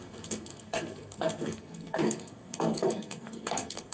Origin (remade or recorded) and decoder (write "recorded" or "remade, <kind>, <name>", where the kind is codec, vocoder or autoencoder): remade, codec, SNAC